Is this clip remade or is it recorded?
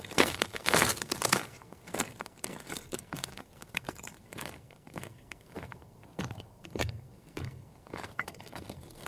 remade